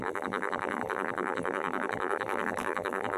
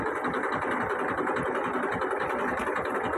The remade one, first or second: first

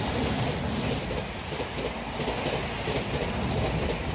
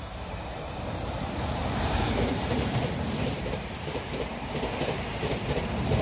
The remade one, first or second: second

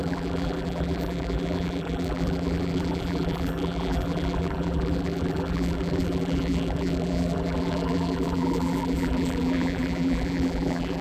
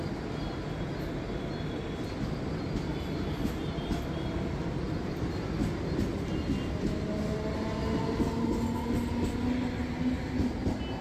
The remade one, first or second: first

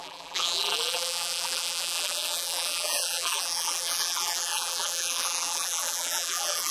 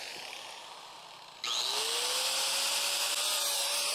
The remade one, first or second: first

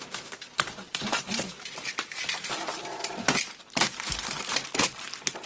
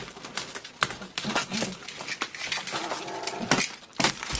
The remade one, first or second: first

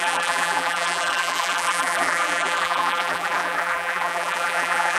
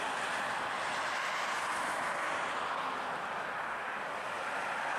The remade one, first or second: first